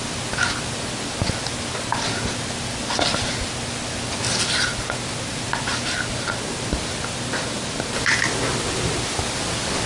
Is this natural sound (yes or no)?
yes